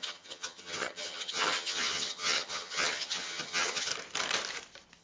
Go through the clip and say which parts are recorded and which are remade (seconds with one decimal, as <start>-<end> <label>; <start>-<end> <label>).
0.0-3.9 remade; 3.9-5.0 recorded

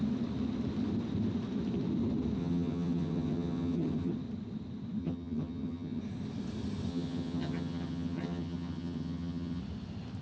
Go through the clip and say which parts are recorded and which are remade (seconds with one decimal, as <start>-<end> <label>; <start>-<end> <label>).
0.0-2.4 recorded; 2.4-4.1 remade; 4.1-5.0 recorded; 5.0-6.0 remade; 6.0-6.9 recorded; 6.9-9.6 remade; 9.6-10.2 recorded

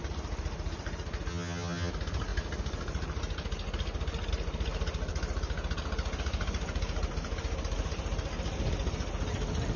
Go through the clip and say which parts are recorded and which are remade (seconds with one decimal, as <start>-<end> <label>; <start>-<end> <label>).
0.0-1.3 recorded; 1.3-1.9 remade; 1.9-9.8 recorded

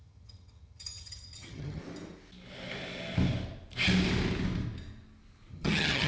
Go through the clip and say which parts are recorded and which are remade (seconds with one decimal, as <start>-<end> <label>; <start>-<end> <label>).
0.0-1.8 remade; 1.8-5.5 recorded; 5.5-6.1 remade

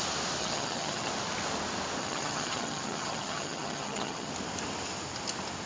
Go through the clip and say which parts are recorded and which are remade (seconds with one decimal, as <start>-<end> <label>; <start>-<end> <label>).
0.0-0.4 recorded; 0.4-1.1 remade; 1.1-2.0 recorded; 2.0-4.3 remade; 4.3-5.7 recorded

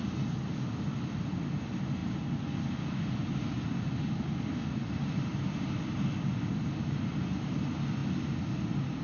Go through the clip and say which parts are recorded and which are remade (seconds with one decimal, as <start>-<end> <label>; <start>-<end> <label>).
0.0-9.0 recorded

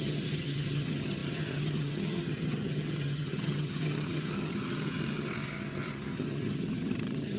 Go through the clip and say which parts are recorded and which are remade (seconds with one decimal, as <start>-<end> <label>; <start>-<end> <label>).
0.0-7.4 remade